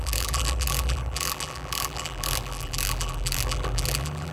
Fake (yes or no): yes